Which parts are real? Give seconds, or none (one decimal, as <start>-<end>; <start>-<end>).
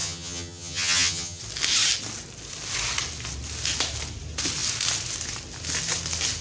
1.4-6.4